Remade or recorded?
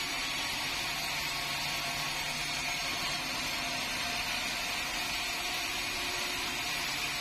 recorded